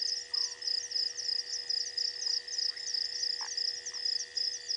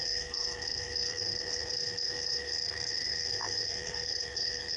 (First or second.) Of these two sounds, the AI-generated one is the second